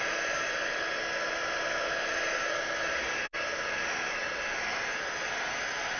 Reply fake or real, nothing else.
real